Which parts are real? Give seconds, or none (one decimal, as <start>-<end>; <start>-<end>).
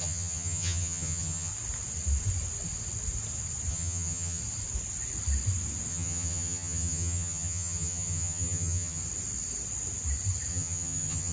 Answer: 1.5-3.7; 4.4-5.9; 9.0-10.5